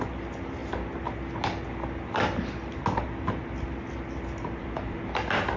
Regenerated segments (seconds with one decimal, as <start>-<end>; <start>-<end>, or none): none